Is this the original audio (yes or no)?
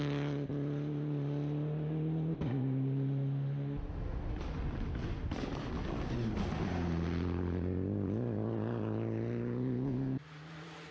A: yes